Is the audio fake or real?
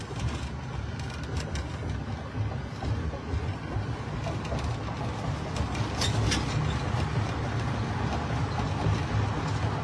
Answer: real